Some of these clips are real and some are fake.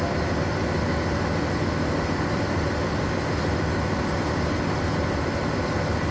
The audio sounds real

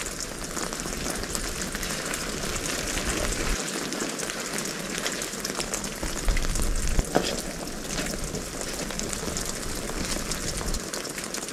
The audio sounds real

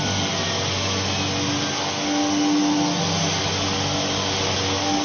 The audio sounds real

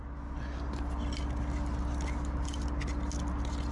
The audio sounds real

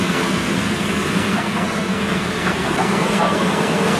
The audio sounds fake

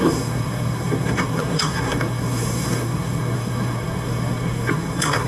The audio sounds fake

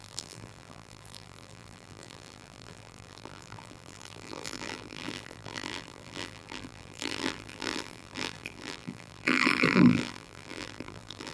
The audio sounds fake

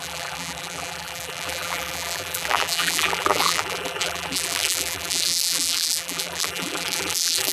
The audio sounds fake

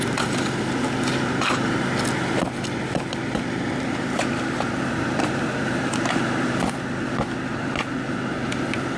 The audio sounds real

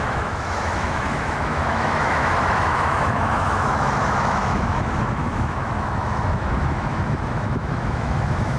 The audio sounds fake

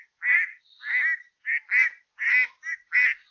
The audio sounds real